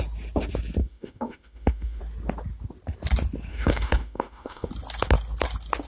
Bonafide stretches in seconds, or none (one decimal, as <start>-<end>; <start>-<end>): 0.0-0.8; 2.0-3.5; 4.7-5.9